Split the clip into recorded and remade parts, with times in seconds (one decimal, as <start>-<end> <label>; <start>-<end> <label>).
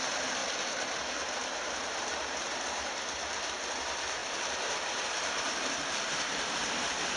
0.0-0.4 remade; 0.4-1.1 recorded; 1.1-7.2 remade